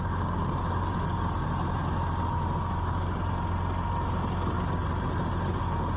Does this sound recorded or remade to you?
recorded